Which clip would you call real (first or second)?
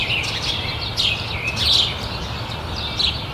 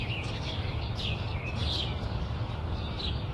first